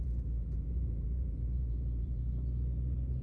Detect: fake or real fake